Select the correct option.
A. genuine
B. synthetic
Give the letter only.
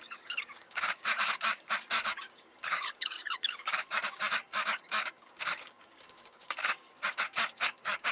B